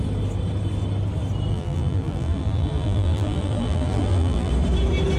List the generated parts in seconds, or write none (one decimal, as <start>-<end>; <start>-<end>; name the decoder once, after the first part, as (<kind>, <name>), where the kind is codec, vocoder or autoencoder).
1.5-4.5 (vocoder, BigVGAN v2)